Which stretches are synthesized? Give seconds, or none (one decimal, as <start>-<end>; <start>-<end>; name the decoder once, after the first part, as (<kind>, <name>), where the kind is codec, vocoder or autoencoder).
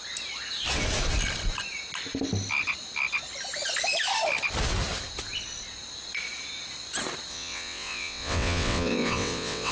7.3-9.7 (vocoder, WaveNeXt)